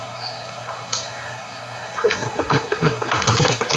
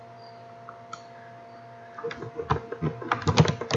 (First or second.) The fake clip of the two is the first